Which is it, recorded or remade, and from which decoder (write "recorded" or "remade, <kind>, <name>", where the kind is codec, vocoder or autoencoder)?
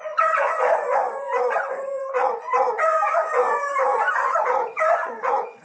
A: remade, vocoder, Vocos